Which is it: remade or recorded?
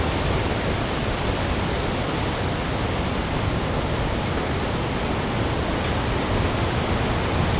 recorded